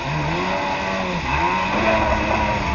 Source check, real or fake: real